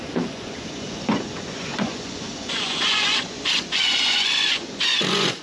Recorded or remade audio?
remade